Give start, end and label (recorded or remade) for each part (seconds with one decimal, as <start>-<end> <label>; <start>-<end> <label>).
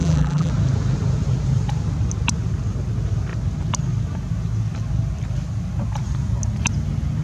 0.0-0.5 remade; 0.5-7.2 recorded